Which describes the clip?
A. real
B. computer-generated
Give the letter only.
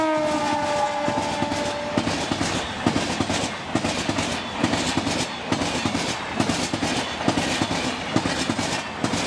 A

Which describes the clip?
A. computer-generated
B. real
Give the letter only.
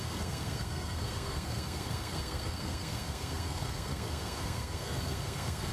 A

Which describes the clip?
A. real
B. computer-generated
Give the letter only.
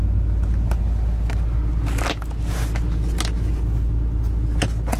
A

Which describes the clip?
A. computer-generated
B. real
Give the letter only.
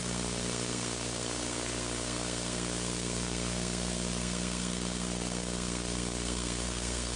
A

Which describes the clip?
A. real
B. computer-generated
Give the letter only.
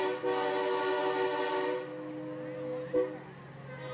A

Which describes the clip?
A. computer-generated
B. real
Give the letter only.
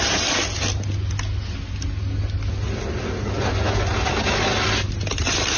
B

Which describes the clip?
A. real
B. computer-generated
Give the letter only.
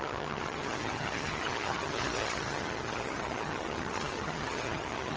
B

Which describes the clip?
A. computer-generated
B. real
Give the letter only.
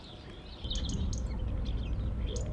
B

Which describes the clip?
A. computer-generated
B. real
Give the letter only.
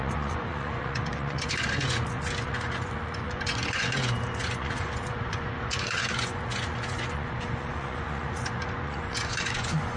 A